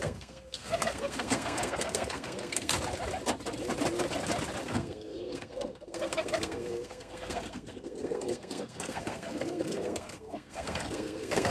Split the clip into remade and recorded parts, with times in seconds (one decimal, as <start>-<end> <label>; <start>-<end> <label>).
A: 0.0-2.7 remade; 2.7-4.6 recorded; 4.6-11.5 remade